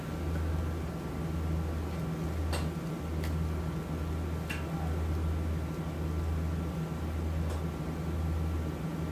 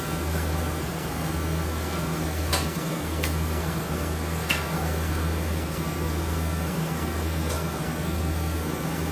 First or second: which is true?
first